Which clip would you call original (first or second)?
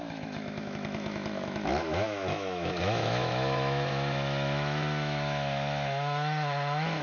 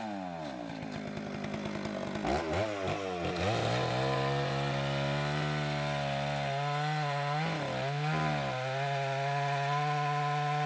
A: second